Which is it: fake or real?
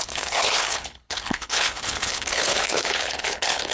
fake